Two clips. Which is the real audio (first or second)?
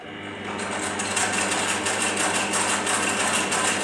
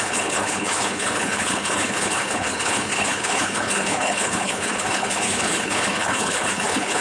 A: first